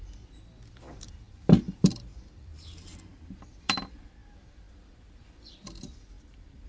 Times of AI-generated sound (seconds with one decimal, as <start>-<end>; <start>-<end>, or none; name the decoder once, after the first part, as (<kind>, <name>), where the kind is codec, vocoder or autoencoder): 0.0-2.5 (vocoder, BigVGAN v2); 3.3-6.7